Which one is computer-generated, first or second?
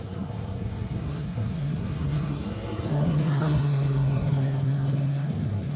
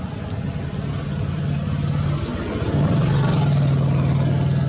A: first